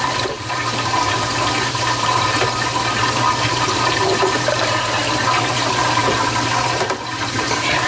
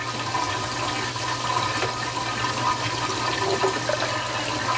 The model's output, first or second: first